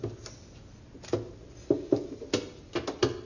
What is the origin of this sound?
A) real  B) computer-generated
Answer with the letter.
A